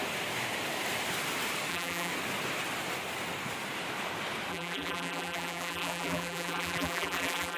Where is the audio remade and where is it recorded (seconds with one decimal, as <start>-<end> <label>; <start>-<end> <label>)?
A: 0.0-1.7 recorded; 1.7-2.1 remade; 2.1-4.5 recorded; 4.5-7.6 remade